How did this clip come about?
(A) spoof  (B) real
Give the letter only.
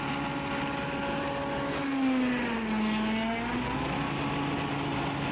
B